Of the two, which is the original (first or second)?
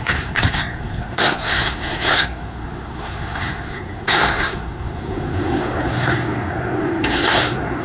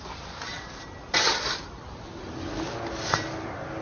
second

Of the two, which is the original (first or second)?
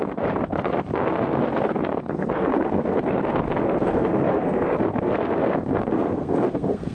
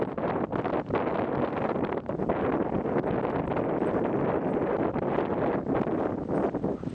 second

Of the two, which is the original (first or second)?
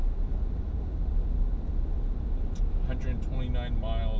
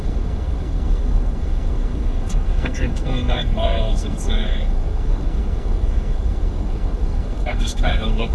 first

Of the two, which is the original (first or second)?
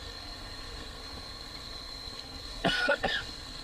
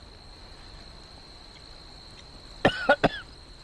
second